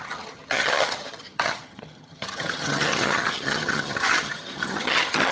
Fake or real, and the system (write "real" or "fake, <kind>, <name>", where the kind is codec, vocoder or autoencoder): fake, vocoder, HiFi-GAN